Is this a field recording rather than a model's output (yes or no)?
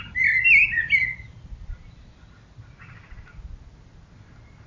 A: yes